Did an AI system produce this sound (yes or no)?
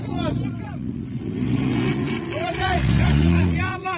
yes